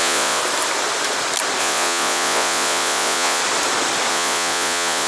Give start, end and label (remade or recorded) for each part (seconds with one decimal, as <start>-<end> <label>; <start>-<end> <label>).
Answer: 0.0-0.4 remade; 0.4-1.6 recorded; 1.6-3.4 remade; 3.4-4.1 recorded; 4.1-5.1 remade